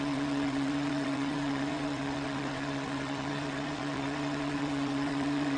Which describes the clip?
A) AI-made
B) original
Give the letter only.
A